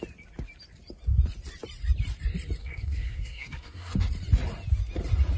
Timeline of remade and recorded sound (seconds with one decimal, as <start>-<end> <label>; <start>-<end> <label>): 0.0-2.6 recorded; 2.6-3.9 remade; 3.9-5.4 recorded